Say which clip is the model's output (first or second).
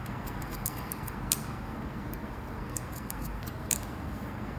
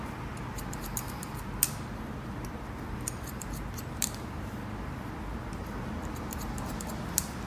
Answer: first